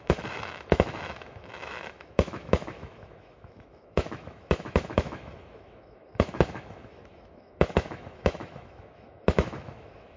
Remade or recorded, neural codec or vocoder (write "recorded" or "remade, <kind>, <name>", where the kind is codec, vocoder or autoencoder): remade, autoencoder, DAC-VAE